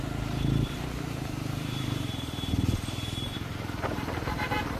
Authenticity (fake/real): fake